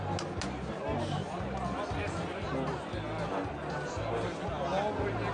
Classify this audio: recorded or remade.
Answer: recorded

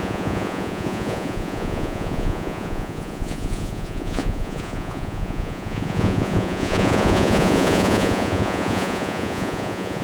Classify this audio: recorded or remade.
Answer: remade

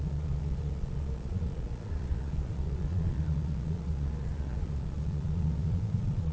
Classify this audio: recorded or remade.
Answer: remade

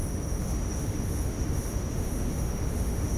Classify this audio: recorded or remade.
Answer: remade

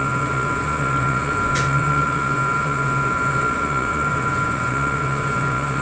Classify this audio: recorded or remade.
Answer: remade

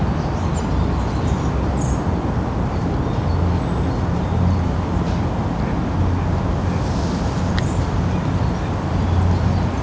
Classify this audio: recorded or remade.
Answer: recorded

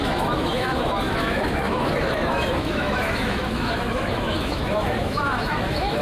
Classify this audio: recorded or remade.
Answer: remade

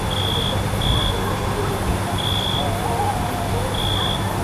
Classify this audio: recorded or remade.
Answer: recorded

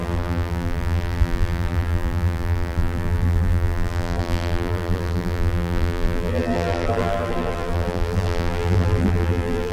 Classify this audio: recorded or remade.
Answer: remade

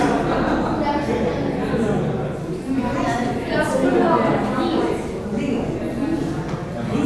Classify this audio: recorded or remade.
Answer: recorded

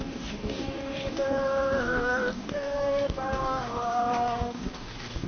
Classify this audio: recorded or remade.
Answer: remade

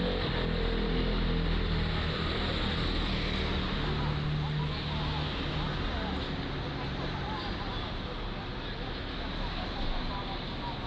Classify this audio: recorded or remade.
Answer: recorded